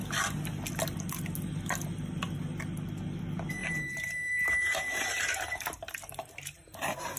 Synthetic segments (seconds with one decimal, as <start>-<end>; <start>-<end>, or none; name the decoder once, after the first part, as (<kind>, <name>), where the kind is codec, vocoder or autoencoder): 3.6-7.2 (vocoder, BigVGAN v2)